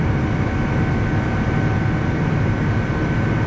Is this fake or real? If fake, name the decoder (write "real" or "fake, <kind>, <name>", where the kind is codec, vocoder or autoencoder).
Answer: real